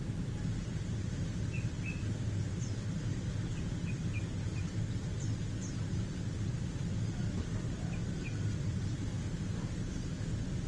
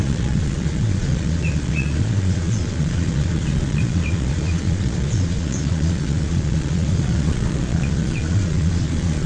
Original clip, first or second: first